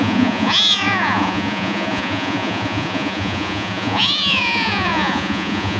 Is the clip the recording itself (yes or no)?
no